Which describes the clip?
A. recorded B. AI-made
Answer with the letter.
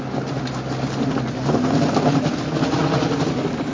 A